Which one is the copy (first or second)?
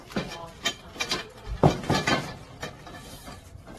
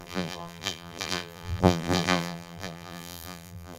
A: second